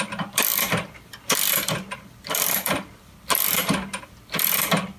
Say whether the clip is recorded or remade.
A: remade